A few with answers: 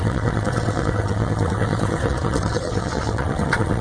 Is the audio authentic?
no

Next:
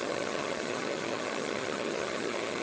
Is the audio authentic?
no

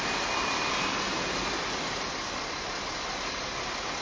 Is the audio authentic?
yes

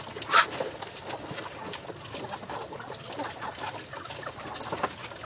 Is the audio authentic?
yes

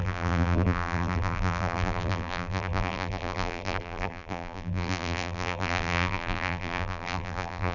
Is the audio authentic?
no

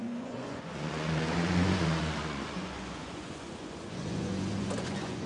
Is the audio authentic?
no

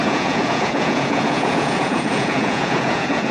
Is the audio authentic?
no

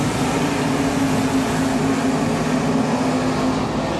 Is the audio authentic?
yes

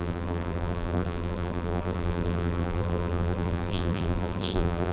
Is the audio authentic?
no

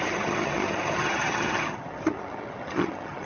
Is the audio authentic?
no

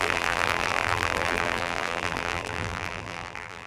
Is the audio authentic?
no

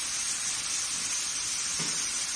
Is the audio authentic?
yes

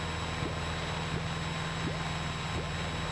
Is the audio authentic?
yes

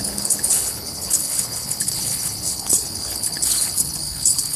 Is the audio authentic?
no